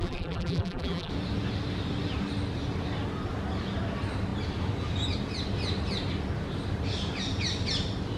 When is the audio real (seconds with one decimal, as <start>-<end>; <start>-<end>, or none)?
1.1-8.2